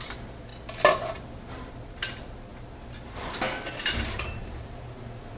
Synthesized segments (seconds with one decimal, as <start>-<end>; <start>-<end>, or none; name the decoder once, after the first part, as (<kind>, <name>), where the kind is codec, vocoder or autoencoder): 0.0-0.5 (vocoder, BigVGAN v2); 1.2-5.4